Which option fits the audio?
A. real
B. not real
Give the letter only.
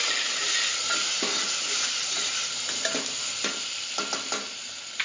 A